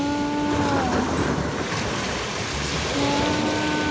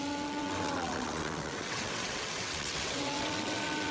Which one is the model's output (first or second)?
second